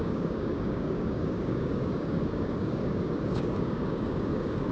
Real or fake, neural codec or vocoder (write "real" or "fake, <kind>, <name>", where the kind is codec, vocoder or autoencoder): fake, codec, DAC